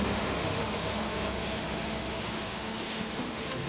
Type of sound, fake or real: fake